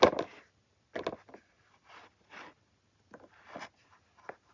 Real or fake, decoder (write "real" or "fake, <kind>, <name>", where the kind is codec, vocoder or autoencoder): real